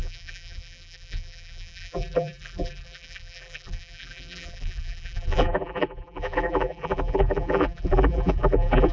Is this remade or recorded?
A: remade